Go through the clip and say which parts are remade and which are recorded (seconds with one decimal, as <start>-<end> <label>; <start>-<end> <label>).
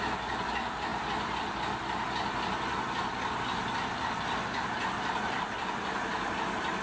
0.0-6.8 recorded